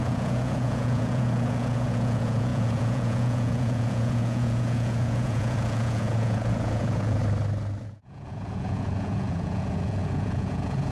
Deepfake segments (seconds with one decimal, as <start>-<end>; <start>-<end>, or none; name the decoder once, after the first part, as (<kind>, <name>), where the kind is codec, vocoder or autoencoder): 0.0-7.2 (vocoder, Vocos); 7.8-10.9